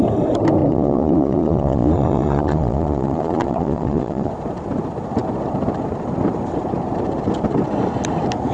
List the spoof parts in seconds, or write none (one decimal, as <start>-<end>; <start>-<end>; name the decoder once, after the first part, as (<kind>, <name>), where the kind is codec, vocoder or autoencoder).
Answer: 0.6-4.3 (vocoder, Vocos)